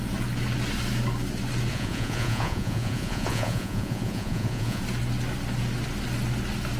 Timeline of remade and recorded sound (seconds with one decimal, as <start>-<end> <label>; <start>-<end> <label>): 0.0-1.7 recorded; 1.7-4.8 remade; 4.8-6.8 recorded